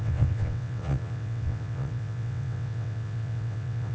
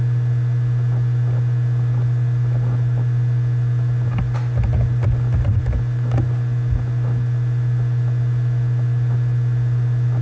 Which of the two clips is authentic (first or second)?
second